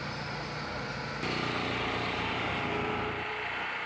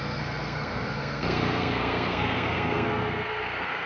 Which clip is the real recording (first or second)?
first